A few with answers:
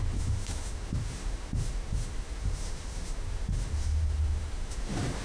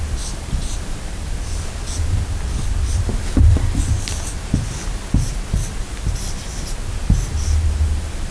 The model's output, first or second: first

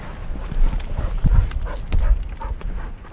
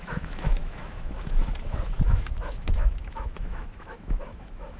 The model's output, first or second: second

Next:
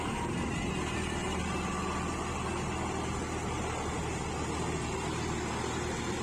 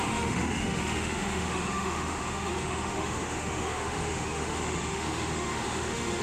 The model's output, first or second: second